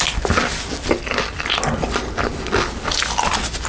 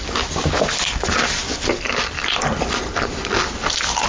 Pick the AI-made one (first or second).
second